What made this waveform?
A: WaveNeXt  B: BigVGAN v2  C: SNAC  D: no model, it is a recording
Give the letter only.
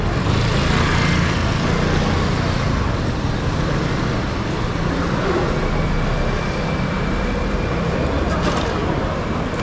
D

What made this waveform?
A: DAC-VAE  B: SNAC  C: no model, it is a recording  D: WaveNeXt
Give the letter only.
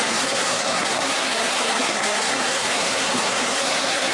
B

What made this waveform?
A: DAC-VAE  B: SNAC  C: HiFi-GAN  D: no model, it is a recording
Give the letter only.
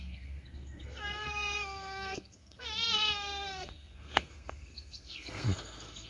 B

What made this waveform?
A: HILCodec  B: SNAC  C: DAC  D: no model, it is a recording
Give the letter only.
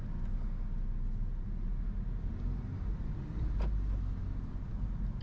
D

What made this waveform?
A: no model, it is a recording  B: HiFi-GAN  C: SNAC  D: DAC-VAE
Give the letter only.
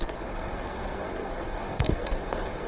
C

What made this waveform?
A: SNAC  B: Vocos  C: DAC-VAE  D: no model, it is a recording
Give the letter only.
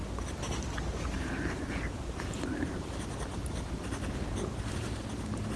D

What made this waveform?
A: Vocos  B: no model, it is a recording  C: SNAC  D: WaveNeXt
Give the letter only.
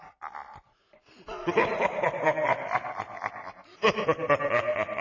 B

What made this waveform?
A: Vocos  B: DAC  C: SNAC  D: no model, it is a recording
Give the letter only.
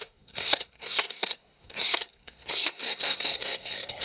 C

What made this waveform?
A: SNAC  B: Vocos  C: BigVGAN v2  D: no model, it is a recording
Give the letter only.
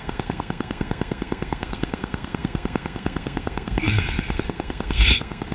A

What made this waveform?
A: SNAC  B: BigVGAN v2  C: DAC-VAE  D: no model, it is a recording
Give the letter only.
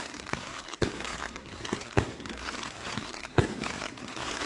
A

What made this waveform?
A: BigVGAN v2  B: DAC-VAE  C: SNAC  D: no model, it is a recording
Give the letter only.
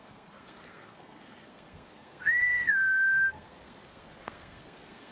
C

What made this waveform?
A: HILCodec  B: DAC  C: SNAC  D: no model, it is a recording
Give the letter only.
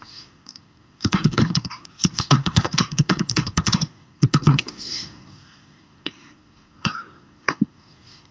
C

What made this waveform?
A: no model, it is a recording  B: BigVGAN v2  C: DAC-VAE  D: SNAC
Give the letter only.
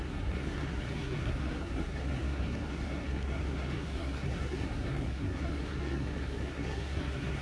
D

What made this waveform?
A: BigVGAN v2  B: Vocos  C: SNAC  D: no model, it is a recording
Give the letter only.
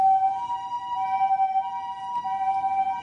D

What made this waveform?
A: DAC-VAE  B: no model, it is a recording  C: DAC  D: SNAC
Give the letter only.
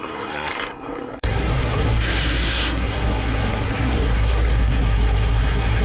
D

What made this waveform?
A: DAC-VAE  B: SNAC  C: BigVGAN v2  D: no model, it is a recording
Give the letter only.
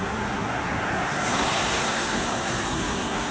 B